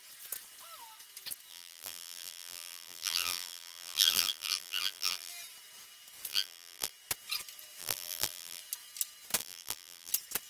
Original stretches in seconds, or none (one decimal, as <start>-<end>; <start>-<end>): 0.0-1.5; 5.3-6.3; 6.9-7.8; 8.6-9.4; 10.1-10.5